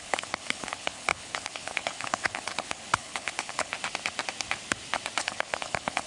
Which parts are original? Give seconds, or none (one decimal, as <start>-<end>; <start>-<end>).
3.7-5.2